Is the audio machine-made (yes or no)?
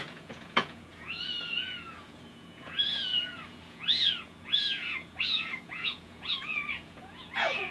yes